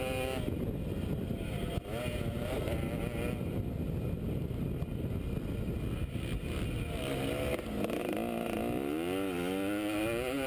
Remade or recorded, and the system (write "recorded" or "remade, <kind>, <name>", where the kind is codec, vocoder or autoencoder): recorded